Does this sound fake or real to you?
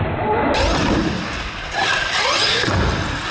real